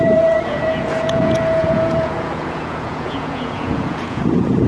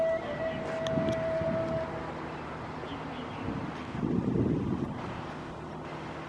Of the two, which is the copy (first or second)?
first